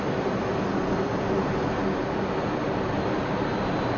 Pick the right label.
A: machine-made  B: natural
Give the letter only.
B